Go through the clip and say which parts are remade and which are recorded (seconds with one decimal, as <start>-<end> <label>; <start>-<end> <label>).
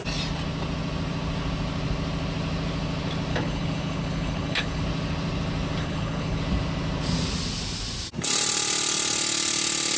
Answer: 0.0-3.3 recorded; 3.3-4.8 remade; 4.8-5.8 recorded; 5.8-6.4 remade; 6.4-10.0 recorded